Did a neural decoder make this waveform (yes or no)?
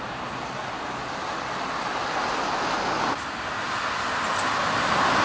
no